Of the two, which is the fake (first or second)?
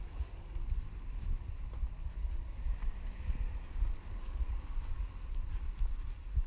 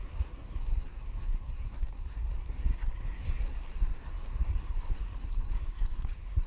second